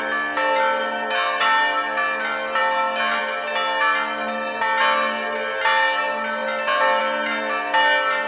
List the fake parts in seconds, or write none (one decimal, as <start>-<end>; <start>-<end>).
none